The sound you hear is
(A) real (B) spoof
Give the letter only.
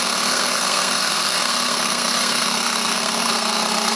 B